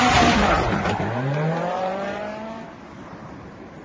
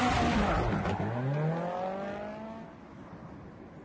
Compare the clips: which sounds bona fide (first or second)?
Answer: second